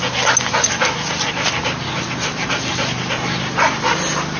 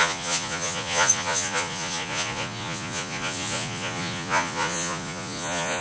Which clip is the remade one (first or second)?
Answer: second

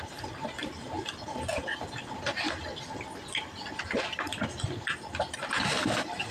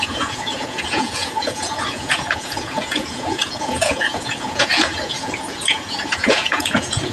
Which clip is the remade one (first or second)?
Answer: second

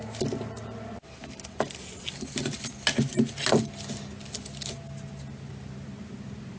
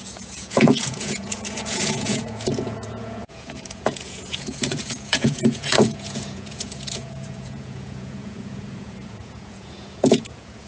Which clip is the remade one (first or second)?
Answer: second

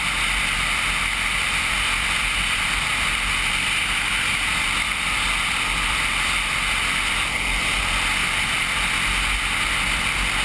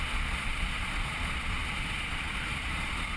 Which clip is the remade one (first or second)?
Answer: second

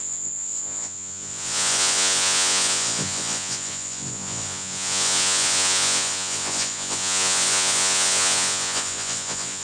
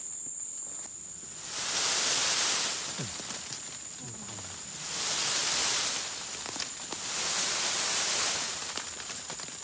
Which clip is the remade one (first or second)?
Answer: first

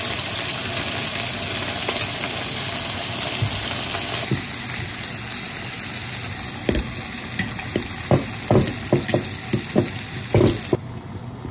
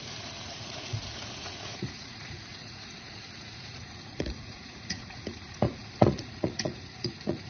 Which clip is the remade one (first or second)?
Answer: second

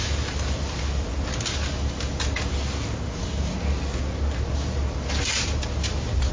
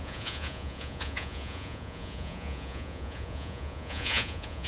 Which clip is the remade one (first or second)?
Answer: second